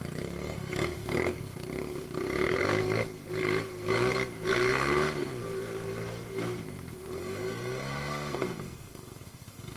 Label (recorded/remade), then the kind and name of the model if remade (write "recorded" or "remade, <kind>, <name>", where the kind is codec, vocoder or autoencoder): remade, codec, SNAC